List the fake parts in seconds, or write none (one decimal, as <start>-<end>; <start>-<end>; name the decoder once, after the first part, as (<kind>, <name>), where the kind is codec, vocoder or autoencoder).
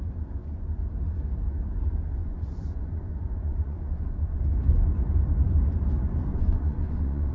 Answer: 0.4-0.9 (vocoder, Vocos); 2.2-4.4; 6.3-7.3